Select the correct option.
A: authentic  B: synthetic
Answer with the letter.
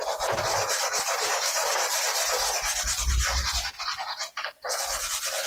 A